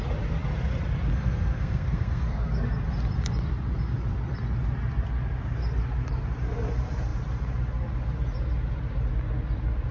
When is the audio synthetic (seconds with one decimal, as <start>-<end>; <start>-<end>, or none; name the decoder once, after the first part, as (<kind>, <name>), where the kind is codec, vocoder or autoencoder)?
1.1-2.5 (codec, SNAC)